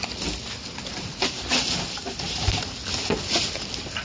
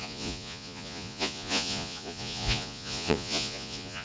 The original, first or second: first